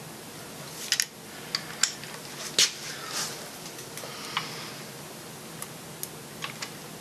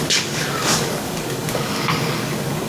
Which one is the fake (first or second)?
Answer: second